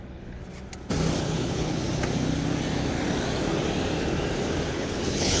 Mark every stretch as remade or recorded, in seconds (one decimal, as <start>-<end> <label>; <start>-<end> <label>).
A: 0.0-0.4 remade; 0.4-1.2 recorded; 1.2-1.8 remade; 1.8-4.7 recorded; 4.7-5.4 remade